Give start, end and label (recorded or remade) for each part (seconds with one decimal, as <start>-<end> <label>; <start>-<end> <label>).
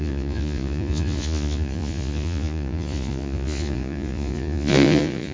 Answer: 0.0-5.3 remade